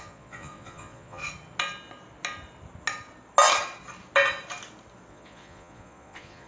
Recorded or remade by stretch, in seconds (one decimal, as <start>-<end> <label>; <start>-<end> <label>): 0.0-1.2 remade; 1.2-5.1 recorded; 5.1-6.5 remade